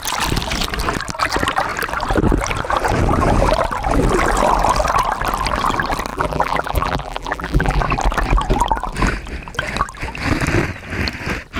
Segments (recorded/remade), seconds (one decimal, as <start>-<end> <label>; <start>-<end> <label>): 0.0-6.1 recorded; 6.1-7.8 remade; 7.8-11.6 recorded